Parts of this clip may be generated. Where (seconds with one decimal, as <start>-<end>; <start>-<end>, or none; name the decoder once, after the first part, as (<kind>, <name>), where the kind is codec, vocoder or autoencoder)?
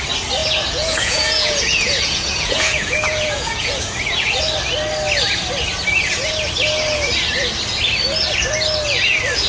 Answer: 0.4-4.4 (vocoder, Vocos)